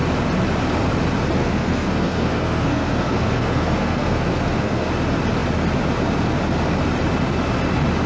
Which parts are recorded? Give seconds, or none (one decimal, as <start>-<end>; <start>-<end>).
0.0-1.4; 4.9-8.1